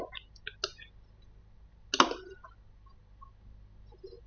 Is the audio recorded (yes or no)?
yes